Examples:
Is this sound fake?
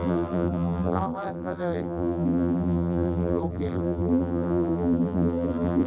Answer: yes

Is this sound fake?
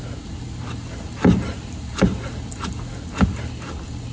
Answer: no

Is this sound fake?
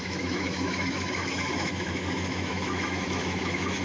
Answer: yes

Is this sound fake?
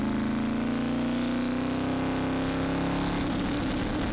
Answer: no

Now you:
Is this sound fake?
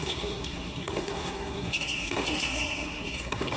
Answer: yes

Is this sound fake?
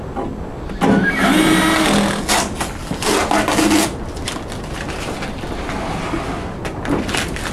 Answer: no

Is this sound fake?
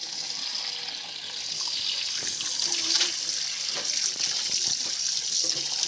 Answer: no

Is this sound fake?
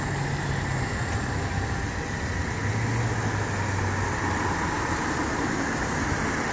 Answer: no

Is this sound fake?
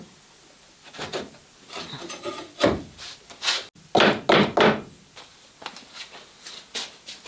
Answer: no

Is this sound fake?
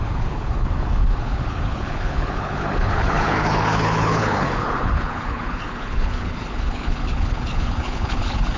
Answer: yes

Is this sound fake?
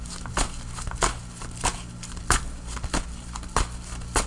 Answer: no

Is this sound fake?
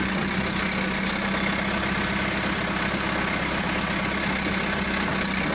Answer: no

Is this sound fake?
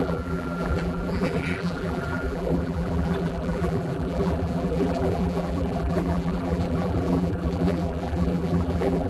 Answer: yes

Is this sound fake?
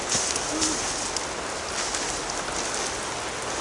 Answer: no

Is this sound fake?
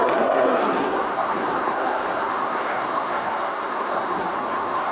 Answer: yes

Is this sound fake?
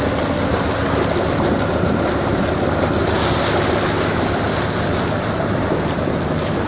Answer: no